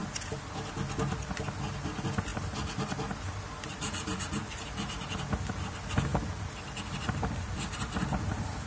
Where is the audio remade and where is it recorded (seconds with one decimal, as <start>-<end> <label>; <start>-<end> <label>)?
0.0-0.7 remade; 0.7-2.3 recorded; 2.3-3.3 remade; 3.3-6.1 recorded; 6.1-7.1 remade; 7.1-8.7 recorded